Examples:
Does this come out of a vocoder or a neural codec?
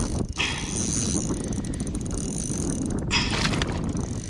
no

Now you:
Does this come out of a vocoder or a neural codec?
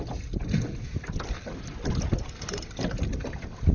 no